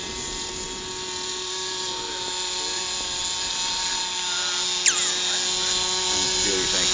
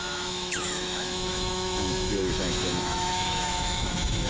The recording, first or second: first